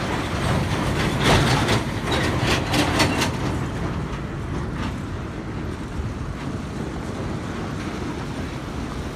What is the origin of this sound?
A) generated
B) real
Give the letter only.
B